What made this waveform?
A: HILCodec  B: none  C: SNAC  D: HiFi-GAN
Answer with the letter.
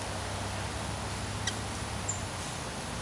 B